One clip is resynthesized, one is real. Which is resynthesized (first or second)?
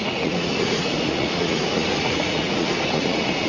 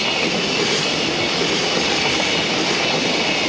first